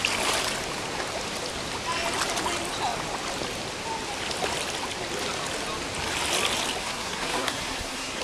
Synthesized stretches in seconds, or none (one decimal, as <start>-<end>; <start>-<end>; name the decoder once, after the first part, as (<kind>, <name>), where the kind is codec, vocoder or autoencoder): 6.8-8.2 (codec, SNAC)